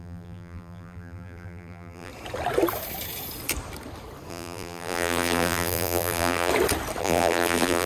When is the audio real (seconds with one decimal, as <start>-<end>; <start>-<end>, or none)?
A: 2.1-4.3; 6.5-7.0